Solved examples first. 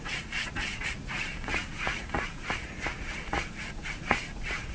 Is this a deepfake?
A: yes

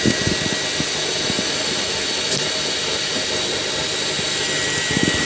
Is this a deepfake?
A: no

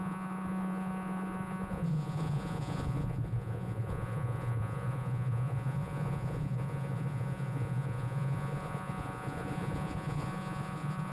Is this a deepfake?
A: yes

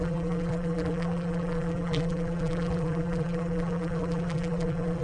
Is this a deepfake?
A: yes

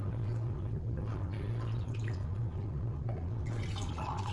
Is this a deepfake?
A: yes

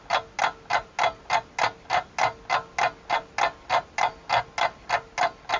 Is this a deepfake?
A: no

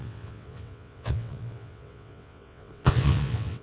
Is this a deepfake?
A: yes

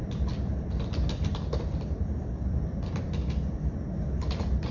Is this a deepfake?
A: no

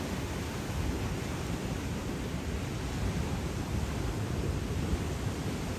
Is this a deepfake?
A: no